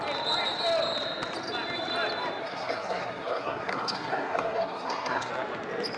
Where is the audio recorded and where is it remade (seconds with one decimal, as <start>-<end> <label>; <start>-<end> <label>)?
0.0-2.4 recorded; 2.4-5.3 remade; 5.3-6.0 recorded